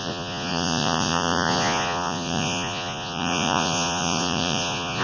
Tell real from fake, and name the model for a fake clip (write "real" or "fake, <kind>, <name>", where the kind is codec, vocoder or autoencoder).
fake, vocoder, Vocos